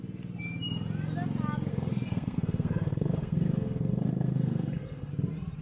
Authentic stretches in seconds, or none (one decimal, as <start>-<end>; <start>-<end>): 0.0-1.7; 5.1-5.6